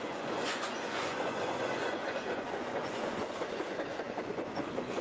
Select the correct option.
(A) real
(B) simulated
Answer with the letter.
B